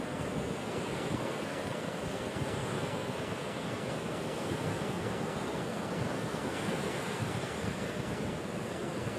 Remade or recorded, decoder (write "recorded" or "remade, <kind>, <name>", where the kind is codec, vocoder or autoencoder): remade, codec, SNAC